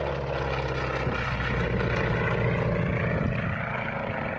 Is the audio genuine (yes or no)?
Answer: yes